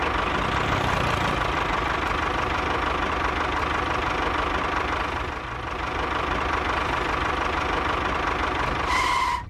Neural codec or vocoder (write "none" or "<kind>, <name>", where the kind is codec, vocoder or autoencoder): none